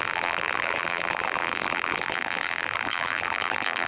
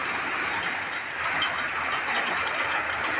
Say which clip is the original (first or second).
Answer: second